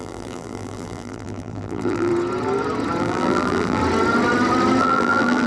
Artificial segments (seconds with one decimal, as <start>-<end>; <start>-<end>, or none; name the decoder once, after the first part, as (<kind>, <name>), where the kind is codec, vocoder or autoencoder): 0.0-2.1 (vocoder, BigVGAN v2); 3.0-3.8; 4.8-5.5